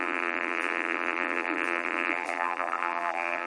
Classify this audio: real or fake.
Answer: fake